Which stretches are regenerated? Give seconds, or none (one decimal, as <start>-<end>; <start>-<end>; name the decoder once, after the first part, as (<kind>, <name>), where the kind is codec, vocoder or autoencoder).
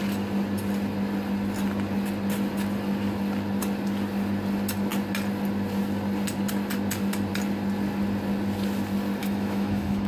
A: 9.2-10.1 (autoencoder, DAC-VAE)